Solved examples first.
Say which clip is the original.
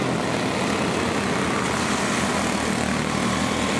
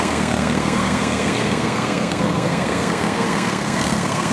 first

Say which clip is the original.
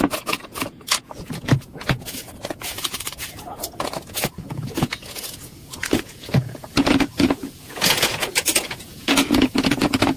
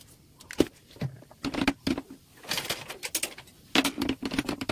second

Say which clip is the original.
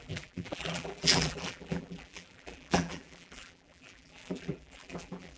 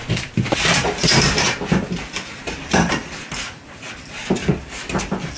second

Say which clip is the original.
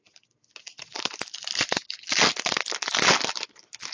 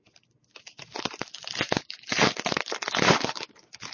first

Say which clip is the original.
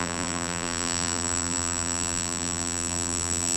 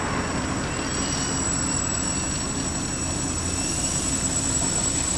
second